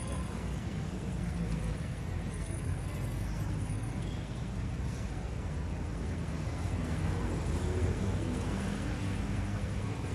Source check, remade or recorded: remade